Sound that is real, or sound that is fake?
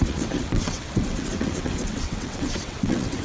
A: fake